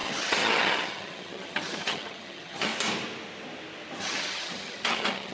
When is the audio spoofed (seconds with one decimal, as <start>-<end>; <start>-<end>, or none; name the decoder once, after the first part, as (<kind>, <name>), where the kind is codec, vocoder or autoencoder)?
0.0-2.7 (vocoder, HiFi-GAN); 4.0-5.3